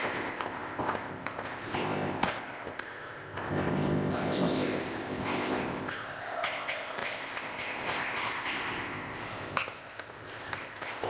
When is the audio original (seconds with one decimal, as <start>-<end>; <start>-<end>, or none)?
none